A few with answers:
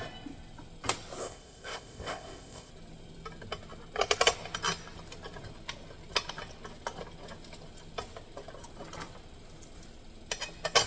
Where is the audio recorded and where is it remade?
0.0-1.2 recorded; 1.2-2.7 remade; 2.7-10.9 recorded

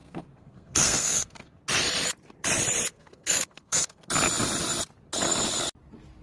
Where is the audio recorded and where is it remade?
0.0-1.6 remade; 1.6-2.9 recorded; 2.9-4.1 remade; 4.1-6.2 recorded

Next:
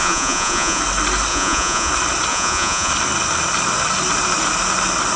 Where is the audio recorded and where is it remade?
0.0-0.8 remade; 0.8-1.3 recorded; 1.3-1.9 remade; 1.9-2.3 recorded; 2.3-2.9 remade; 2.9-5.2 recorded

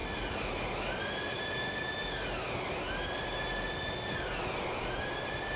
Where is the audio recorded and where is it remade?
0.0-0.5 remade; 0.5-5.6 recorded

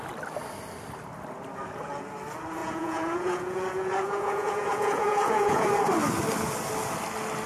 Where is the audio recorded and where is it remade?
0.0-2.6 recorded; 2.6-5.7 remade; 5.7-7.5 recorded